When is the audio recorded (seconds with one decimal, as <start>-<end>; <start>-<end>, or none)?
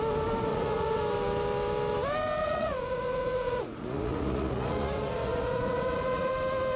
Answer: 0.0-0.5; 1.0-2.4; 6.3-6.8